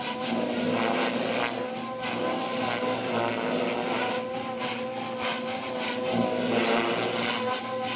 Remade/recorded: recorded